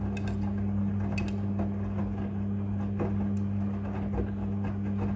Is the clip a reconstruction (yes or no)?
no